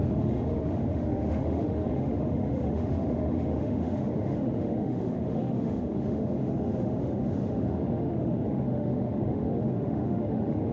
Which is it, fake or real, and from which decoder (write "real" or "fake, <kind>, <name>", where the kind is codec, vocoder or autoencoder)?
fake, autoencoder, DAC-VAE